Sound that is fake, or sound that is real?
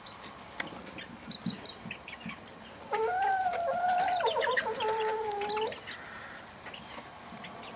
real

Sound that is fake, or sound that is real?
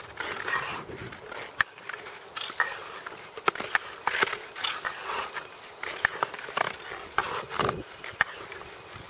real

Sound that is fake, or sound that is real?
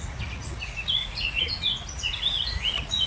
fake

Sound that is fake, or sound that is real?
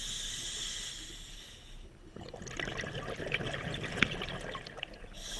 real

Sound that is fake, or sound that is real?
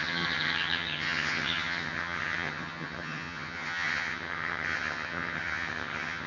fake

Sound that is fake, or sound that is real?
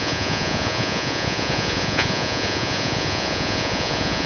fake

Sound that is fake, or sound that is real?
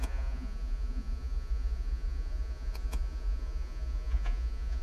fake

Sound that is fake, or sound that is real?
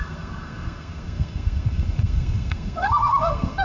fake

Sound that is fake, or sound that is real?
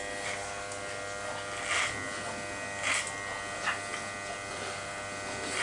real